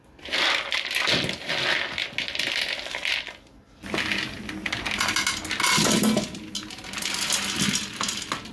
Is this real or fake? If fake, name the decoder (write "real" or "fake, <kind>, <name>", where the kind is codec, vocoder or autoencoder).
real